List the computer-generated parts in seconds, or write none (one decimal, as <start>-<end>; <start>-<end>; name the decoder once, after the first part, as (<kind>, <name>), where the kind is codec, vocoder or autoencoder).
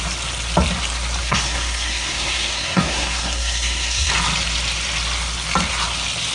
1.2-4.1 (codec, SNAC)